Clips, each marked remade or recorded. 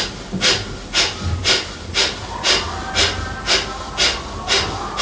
recorded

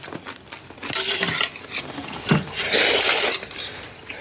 recorded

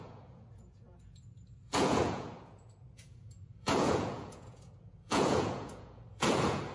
remade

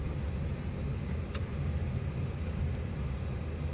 recorded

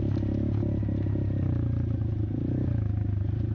recorded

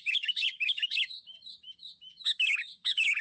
remade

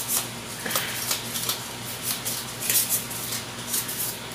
recorded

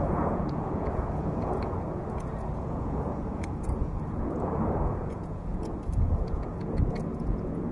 remade